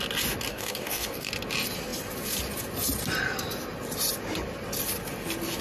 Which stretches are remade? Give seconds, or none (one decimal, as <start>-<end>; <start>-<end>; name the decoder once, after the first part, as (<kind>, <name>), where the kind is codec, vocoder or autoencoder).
0.5-1.3 (codec, DAC)